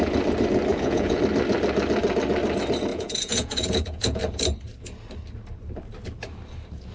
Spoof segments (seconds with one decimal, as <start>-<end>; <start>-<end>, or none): 0.7-1.2; 2.9-4.2